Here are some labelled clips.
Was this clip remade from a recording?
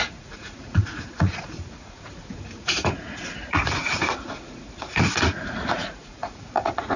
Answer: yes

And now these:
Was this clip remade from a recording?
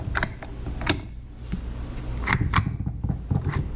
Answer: no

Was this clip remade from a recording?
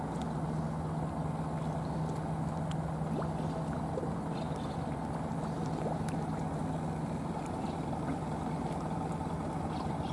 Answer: no